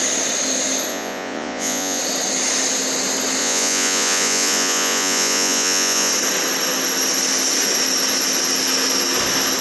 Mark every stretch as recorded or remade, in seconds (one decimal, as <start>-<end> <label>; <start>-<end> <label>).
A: 0.0-0.9 recorded; 0.9-2.0 remade; 2.0-3.4 recorded; 3.4-6.1 remade; 6.1-9.6 recorded